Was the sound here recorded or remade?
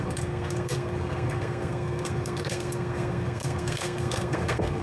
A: remade